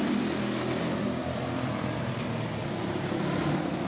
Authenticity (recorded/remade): recorded